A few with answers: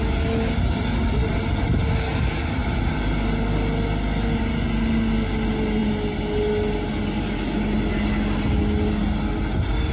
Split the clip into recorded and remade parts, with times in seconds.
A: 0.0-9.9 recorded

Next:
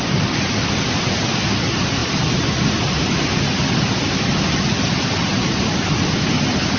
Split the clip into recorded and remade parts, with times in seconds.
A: 0.0-6.8 recorded

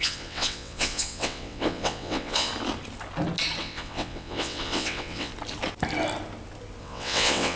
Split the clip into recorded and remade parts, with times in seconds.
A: 0.0-2.5 remade; 2.5-3.6 recorded; 3.6-5.3 remade; 5.3-6.8 recorded; 6.8-7.6 remade

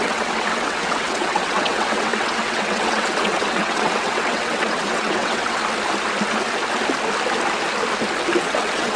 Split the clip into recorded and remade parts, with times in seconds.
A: 0.0-5.6 remade; 5.6-8.4 recorded; 8.4-9.0 remade

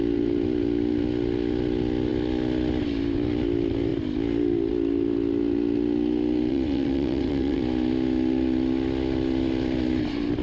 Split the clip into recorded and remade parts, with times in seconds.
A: 0.0-6.5 recorded; 6.5-7.6 remade; 7.6-10.4 recorded

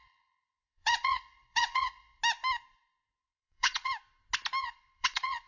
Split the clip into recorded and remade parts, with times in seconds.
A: 0.0-2.2 remade; 2.2-3.2 recorded; 3.2-3.9 remade; 3.9-4.6 recorded; 4.6-5.5 remade